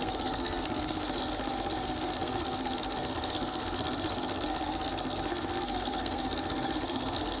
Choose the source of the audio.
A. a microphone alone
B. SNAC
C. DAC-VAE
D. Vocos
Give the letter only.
B